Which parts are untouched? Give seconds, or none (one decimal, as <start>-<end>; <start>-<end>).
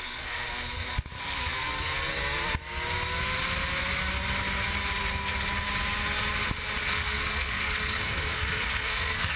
0.5-1.2; 1.7-6.8